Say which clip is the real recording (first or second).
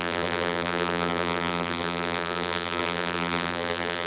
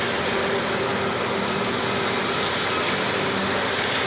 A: second